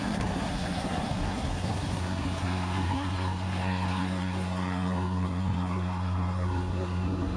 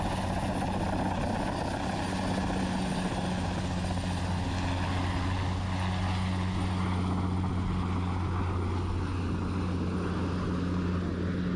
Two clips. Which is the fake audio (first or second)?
first